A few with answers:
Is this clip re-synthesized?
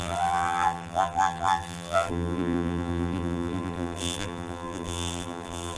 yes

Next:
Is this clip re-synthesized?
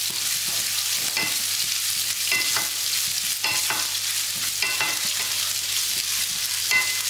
no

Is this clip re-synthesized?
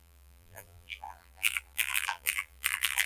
yes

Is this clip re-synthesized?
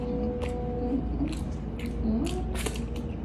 no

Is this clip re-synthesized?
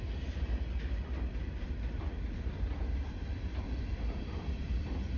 yes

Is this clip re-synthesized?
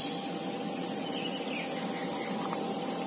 yes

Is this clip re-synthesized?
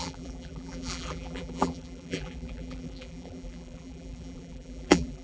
yes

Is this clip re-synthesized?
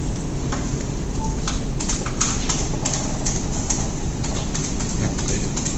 no